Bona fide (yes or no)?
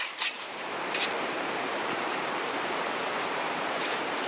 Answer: no